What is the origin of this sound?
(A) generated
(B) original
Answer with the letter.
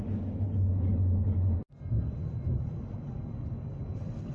B